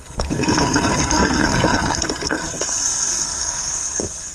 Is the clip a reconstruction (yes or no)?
yes